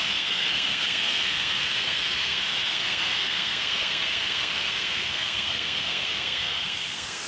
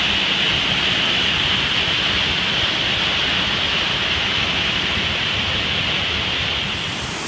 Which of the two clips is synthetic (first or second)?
first